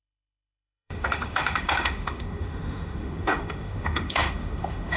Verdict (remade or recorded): remade